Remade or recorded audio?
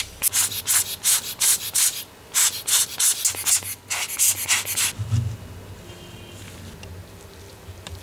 recorded